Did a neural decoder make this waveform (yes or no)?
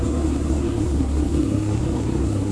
yes